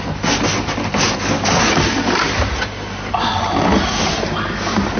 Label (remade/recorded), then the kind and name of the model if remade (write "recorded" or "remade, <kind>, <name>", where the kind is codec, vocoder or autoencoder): recorded